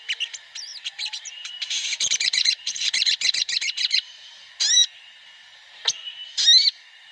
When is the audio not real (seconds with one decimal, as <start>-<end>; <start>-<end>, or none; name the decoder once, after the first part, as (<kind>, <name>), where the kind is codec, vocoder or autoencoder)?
0.7-4.3 (vocoder, BigVGAN v2)